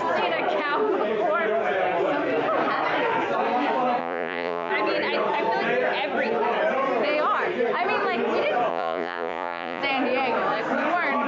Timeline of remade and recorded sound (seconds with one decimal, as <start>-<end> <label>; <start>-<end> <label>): 0.0-4.0 recorded; 4.0-4.7 remade; 4.7-8.7 recorded; 8.7-9.8 remade; 9.8-11.3 recorded